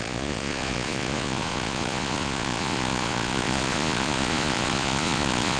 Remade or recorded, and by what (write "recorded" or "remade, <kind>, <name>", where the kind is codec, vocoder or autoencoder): remade, vocoder, Vocos